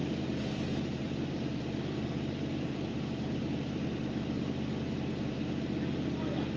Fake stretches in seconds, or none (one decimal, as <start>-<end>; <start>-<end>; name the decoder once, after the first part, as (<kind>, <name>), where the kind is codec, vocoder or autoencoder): 0.0-4.0 (vocoder, BigVGAN v2)